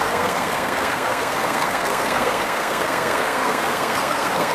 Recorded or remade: remade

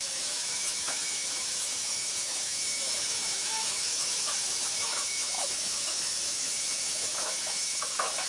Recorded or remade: remade